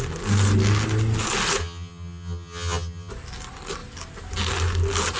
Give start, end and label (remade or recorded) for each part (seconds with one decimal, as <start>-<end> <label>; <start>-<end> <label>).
0.0-1.6 recorded; 1.6-3.1 remade; 3.1-5.2 recorded